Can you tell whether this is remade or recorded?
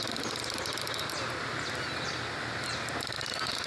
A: recorded